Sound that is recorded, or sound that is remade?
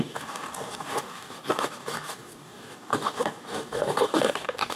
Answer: remade